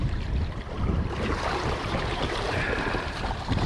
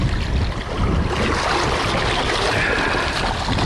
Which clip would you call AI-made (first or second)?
first